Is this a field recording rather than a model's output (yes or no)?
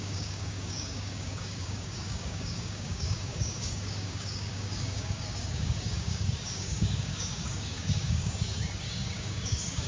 no